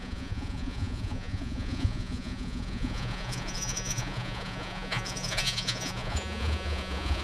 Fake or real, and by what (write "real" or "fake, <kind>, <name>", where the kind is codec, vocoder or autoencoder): fake, vocoder, Vocos